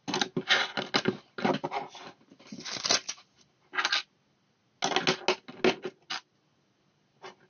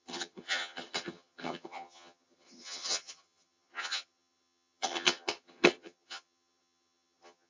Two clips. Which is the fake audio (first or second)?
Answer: second